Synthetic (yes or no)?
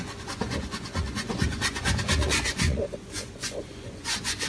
yes